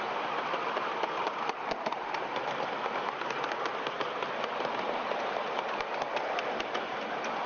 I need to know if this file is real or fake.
real